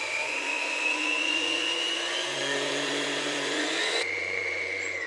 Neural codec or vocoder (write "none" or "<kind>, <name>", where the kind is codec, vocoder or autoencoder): vocoder, Vocos